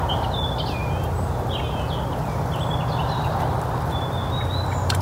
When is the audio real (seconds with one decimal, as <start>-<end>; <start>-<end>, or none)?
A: 0.0-5.0

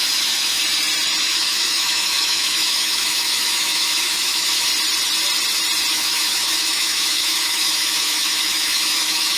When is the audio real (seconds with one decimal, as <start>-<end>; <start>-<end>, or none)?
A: 0.6-1.2; 4.7-5.9

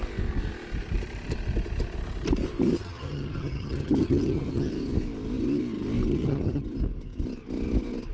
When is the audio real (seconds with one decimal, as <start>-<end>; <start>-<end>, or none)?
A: 0.0-2.7; 4.7-6.1; 6.6-8.1

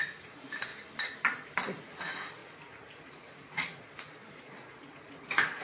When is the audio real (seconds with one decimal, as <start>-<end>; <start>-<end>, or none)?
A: 0.7-1.8